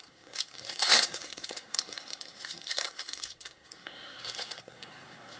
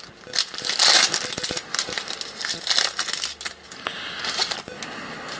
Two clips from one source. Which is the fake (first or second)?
first